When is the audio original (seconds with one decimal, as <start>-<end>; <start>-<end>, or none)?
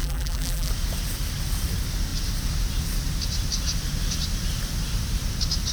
0.7-5.7